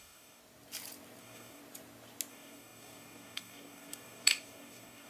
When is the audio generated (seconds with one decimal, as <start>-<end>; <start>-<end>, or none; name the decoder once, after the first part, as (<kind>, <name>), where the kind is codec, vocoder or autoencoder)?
0.0-0.4 (codec, DAC); 1.2-1.6; 2.3-5.1